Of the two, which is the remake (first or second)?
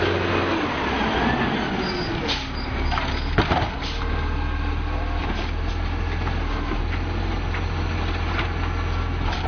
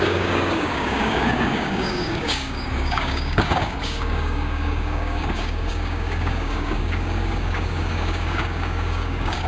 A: second